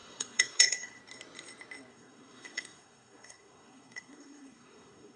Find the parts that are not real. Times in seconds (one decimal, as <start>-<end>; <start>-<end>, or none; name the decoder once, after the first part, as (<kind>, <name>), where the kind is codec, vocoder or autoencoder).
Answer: 0.0-1.0 (codec, SNAC); 1.9-5.2